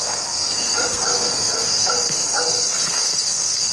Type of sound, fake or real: fake